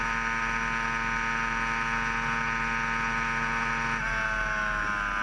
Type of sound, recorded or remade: recorded